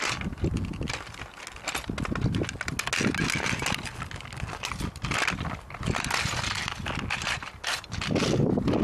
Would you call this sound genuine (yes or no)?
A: yes